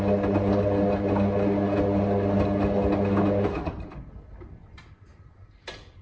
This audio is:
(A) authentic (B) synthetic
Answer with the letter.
A